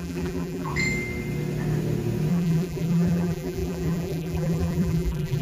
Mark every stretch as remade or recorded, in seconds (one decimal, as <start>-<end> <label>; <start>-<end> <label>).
0.0-0.7 remade; 0.7-2.3 recorded; 2.3-5.4 remade

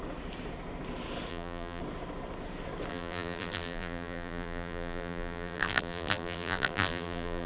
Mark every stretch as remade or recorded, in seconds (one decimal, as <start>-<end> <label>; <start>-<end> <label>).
0.0-1.3 recorded; 1.3-1.8 remade; 1.8-2.9 recorded; 2.9-7.5 remade

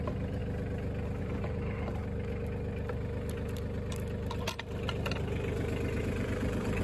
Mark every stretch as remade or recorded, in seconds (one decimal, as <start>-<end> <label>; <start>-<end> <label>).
0.0-0.4 remade; 0.4-1.2 recorded; 1.2-2.0 remade; 2.0-6.0 recorded; 6.0-6.8 remade